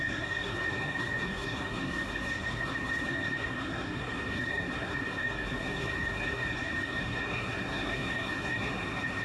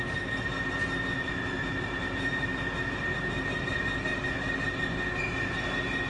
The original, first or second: second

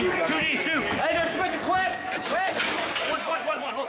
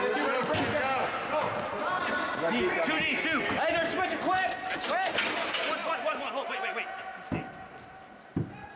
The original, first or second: second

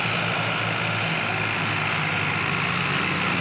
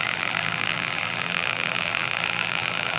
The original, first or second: first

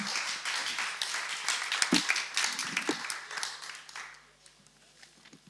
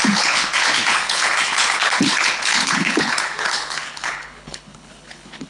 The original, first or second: first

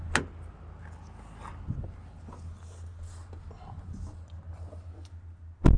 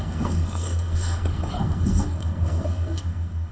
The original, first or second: first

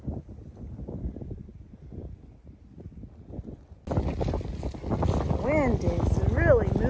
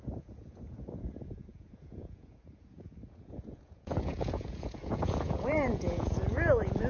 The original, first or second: first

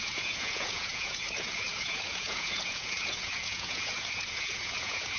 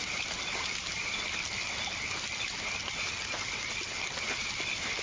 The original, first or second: second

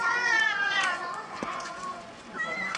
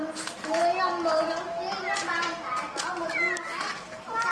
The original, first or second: second